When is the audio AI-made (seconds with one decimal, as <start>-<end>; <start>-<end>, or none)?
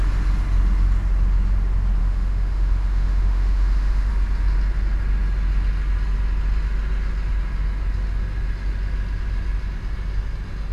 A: 2.0-4.1